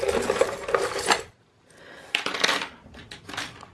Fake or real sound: real